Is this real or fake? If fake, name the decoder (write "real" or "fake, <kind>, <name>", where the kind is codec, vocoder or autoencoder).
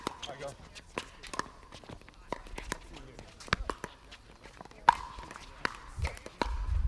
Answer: real